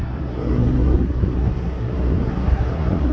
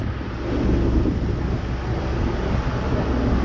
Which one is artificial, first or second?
first